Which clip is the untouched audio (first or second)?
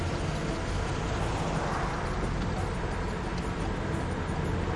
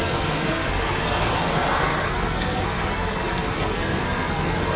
first